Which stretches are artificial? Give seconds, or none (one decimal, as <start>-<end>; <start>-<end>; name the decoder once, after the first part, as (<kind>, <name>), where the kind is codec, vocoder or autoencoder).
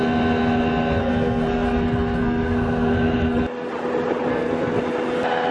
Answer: 1.0-3.4 (codec, SNAC); 4.3-4.8